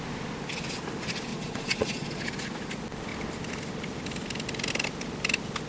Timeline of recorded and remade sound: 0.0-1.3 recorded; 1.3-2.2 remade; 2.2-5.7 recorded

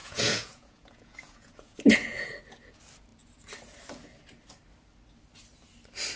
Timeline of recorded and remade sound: 0.0-2.3 remade; 2.3-6.2 recorded